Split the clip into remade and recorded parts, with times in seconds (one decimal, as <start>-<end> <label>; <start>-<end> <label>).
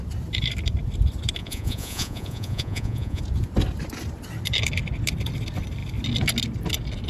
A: 0.0-1.4 recorded; 1.4-3.2 remade; 3.2-7.1 recorded